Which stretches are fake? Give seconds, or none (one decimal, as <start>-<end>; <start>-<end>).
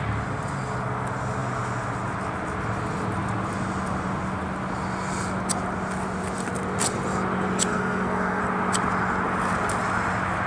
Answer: 7.7-8.4